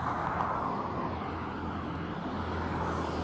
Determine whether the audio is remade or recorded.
recorded